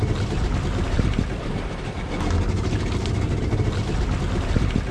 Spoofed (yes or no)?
no